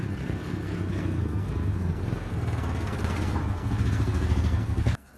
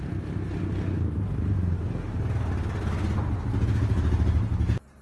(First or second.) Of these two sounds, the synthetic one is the first